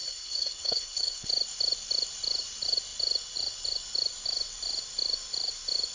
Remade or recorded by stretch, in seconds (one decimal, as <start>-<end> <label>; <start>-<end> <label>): 0.0-1.3 remade; 1.3-5.9 recorded